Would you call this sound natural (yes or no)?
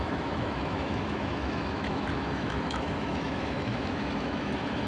no